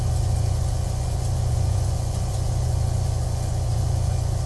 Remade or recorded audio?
remade